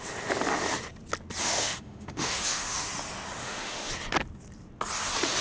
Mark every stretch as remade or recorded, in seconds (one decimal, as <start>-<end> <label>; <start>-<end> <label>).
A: 0.0-1.4 recorded; 1.4-2.9 remade; 2.9-3.4 recorded; 3.4-3.9 remade; 3.9-5.4 recorded